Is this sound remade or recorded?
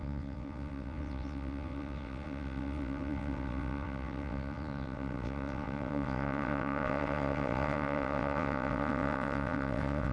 remade